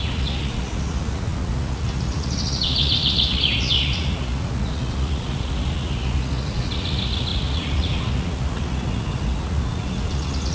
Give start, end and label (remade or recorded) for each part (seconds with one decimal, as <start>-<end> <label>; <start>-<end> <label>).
0.0-10.5 remade